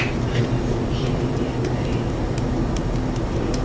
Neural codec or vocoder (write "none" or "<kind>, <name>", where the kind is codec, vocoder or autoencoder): none